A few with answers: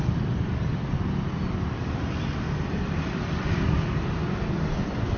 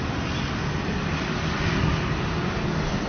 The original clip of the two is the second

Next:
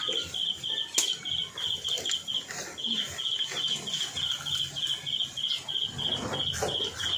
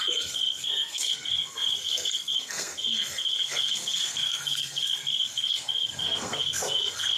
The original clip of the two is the first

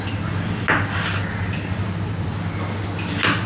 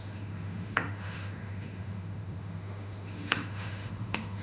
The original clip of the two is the first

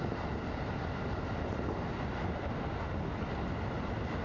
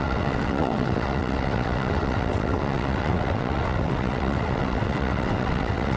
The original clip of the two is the first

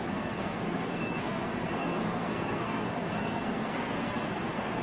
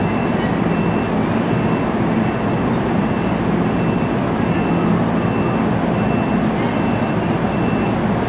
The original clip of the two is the second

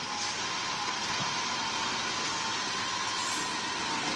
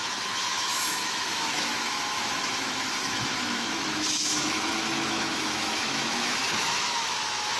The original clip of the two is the first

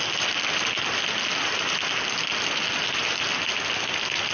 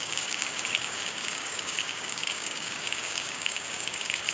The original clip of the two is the first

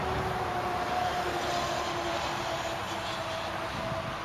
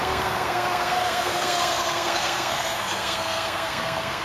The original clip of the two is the first